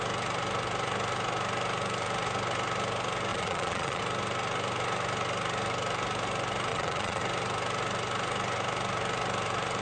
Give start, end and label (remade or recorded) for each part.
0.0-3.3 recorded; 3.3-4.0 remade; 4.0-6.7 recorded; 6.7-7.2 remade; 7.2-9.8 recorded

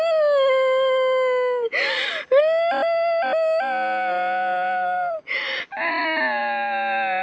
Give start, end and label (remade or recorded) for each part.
0.0-7.2 recorded

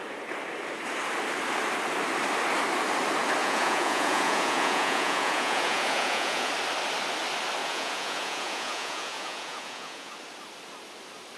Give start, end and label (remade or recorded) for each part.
0.0-3.4 recorded; 3.4-6.5 remade; 6.5-7.6 recorded; 7.6-10.1 remade; 10.1-11.4 recorded

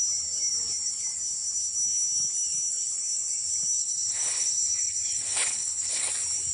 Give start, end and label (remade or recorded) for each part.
0.0-3.8 recorded; 3.8-6.1 remade; 6.1-6.5 recorded